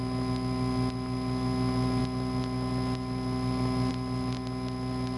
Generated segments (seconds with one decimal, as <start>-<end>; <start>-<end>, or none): none